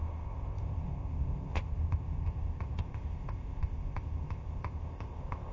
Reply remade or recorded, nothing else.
remade